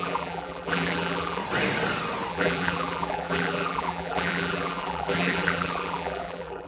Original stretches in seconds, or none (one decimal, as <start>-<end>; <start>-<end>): 1.4-2.3